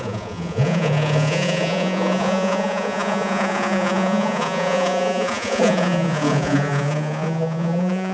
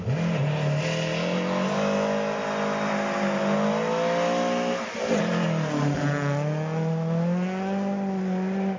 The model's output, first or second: first